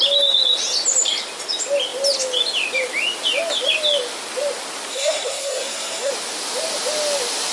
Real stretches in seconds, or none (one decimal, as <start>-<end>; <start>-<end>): 0.0-4.9; 6.1-7.5